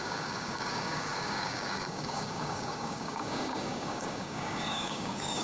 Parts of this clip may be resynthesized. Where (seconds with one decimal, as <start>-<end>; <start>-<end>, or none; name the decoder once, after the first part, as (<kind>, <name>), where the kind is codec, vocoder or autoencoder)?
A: 0.0-5.4 (codec, DAC)